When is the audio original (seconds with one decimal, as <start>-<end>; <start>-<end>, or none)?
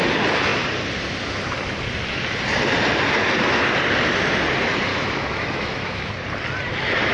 0.0-4.9; 6.1-7.1